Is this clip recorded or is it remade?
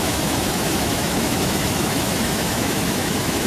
remade